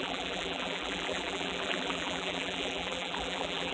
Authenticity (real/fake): fake